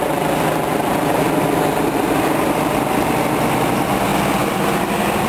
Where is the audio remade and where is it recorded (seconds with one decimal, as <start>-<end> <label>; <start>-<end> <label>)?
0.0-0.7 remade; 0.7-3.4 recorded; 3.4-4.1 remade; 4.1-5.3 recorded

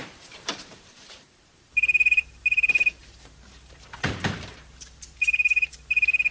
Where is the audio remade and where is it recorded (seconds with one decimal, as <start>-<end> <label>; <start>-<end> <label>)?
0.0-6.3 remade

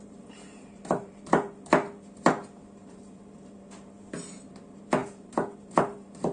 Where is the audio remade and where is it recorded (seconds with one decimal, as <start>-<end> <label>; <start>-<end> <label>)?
0.0-1.7 remade; 1.7-2.8 recorded; 2.8-6.3 remade